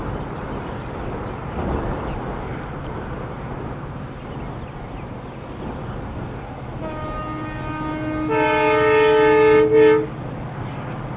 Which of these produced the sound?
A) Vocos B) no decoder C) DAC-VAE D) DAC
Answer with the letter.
B